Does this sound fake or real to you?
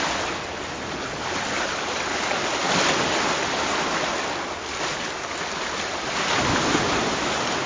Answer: real